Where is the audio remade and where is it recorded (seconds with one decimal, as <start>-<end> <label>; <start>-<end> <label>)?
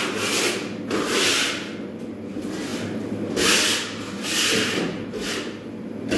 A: 0.0-6.2 recorded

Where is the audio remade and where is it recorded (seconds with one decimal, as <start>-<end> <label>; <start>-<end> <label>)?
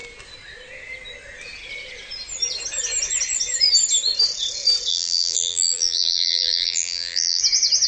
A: 0.0-4.9 recorded; 4.9-7.4 remade; 7.4-7.9 recorded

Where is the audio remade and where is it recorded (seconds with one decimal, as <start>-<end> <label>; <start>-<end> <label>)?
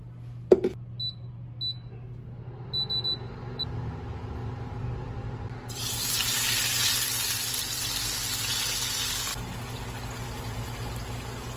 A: 0.0-11.6 recorded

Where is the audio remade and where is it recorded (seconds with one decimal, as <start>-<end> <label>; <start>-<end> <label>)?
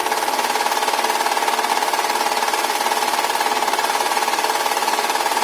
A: 0.0-1.7 recorded; 1.7-5.4 remade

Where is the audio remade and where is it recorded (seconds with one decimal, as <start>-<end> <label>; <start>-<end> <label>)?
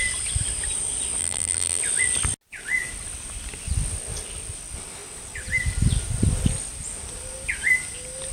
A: 0.0-1.2 recorded; 1.2-1.8 remade; 1.8-8.3 recorded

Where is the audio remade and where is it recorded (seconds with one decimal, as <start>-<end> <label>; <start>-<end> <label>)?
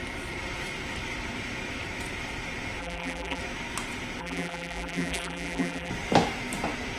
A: 0.0-2.8 recorded; 2.8-3.4 remade; 3.4-4.2 recorded; 4.2-5.9 remade; 5.9-7.0 recorded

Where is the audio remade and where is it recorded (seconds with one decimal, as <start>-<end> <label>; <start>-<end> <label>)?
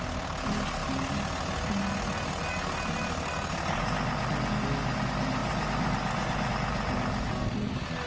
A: 0.0-5.4 recorded; 5.4-6.5 remade; 6.5-8.1 recorded